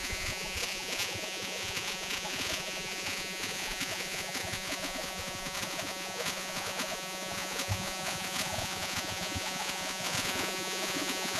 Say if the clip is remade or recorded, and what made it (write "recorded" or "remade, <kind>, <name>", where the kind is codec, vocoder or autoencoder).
remade, vocoder, Vocos